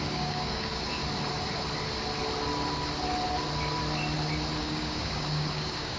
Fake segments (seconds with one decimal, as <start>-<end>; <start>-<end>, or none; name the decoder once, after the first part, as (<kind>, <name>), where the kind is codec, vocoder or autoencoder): 0.0-1.0 (codec, DAC); 4.6-6.0